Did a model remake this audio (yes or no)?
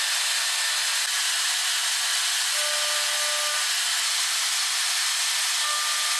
no